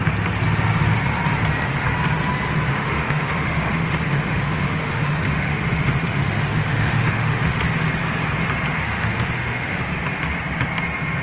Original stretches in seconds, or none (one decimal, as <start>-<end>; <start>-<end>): 0.0-2.7; 7.6-8.7; 9.8-11.2